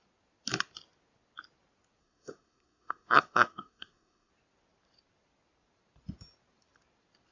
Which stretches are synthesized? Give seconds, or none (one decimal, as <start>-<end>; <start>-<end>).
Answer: 2.0-4.3